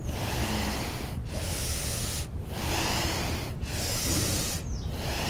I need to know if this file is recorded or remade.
recorded